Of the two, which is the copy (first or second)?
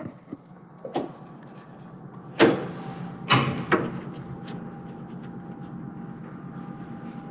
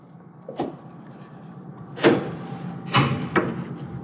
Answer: second